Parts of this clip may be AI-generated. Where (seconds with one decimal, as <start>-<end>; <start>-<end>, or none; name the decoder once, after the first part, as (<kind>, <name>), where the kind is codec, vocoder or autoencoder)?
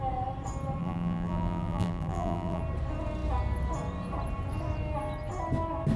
0.8-2.6 (vocoder, BigVGAN v2)